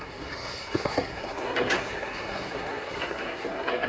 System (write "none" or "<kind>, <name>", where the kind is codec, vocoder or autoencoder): codec, SNAC